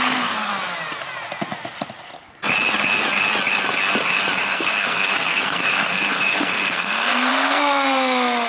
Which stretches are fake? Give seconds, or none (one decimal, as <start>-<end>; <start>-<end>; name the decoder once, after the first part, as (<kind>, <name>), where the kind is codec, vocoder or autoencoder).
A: 0.0-0.5 (codec, SNAC); 4.4-8.5